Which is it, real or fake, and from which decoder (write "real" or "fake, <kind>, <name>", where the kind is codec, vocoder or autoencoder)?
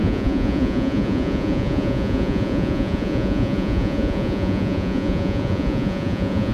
fake, vocoder, Vocos